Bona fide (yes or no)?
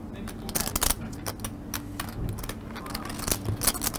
yes